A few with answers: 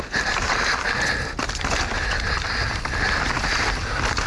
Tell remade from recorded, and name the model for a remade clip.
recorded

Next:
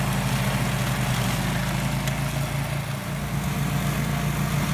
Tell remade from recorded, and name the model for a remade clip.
recorded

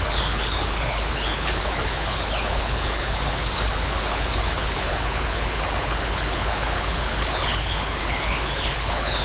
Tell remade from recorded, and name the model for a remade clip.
remade, codec, HILCodec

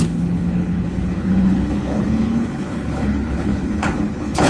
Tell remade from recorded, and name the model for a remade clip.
remade, codec, HILCodec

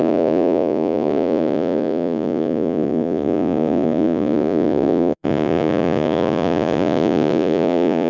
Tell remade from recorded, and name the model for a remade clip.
remade, vocoder, Vocos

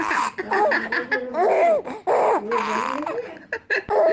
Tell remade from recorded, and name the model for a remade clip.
remade, vocoder, BigVGAN v2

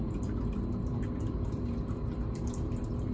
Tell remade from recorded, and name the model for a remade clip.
remade, vocoder, BigVGAN v2